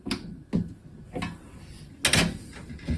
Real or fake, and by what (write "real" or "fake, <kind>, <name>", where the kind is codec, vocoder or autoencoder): real